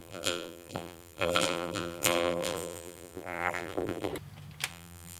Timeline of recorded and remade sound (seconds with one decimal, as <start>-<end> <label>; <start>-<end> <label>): 0.0-4.1 remade; 4.1-4.7 recorded; 4.7-5.2 remade